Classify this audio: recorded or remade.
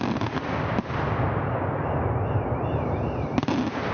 recorded